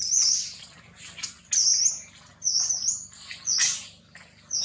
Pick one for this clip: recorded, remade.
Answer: recorded